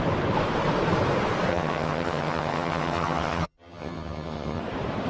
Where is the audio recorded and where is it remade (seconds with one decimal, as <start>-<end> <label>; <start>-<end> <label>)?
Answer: 0.0-1.5 recorded; 1.5-4.6 remade; 4.6-5.1 recorded